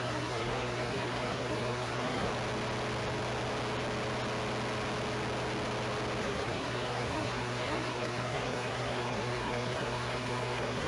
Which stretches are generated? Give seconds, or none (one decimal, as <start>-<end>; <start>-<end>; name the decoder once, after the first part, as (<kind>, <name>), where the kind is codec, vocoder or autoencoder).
0.0-2.3 (codec, SNAC); 6.2-10.9